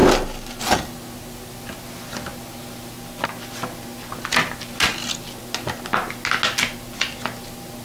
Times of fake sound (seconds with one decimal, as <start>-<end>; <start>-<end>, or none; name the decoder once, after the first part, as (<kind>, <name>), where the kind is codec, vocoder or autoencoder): none